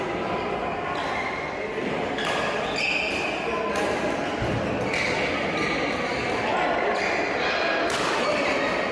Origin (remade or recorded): recorded